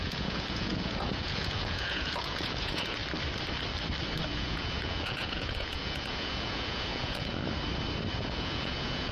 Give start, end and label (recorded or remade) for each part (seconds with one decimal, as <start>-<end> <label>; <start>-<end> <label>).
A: 0.0-3.0 remade; 3.0-4.3 recorded; 4.3-7.3 remade; 7.3-8.2 recorded; 8.2-9.1 remade